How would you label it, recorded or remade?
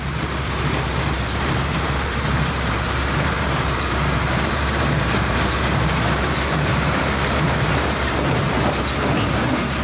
remade